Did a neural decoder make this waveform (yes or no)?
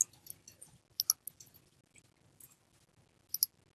no